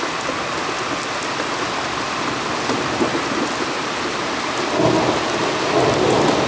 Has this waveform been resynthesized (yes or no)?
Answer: no